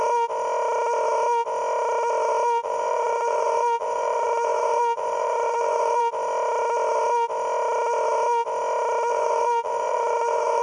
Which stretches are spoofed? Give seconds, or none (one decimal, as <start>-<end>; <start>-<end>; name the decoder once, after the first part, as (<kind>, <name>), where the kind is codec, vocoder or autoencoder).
2.6-6.0 (vocoder, Vocos); 9.1-10.6